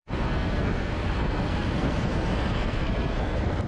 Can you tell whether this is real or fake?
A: fake